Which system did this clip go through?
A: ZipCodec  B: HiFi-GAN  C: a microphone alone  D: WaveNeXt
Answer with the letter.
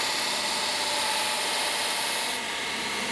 C